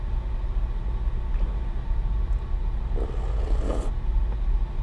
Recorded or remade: recorded